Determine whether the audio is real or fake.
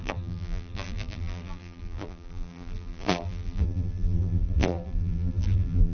fake